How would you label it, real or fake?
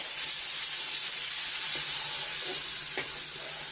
fake